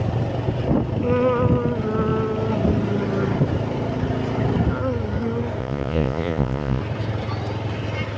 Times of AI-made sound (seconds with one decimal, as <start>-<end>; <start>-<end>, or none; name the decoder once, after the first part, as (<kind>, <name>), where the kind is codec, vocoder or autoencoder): 5.6-6.8 (vocoder, Vocos)